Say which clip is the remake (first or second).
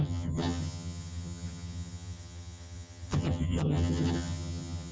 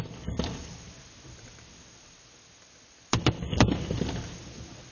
first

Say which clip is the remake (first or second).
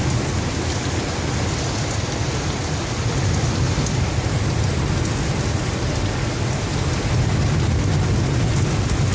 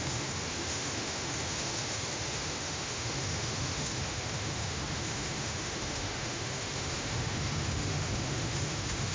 second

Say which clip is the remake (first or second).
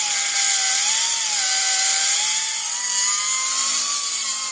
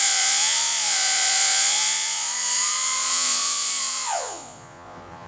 second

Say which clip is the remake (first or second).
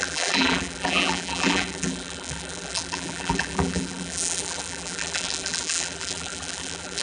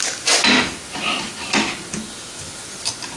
first